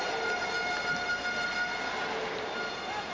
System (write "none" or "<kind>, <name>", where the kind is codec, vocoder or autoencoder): none